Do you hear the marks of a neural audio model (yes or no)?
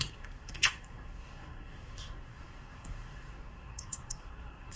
yes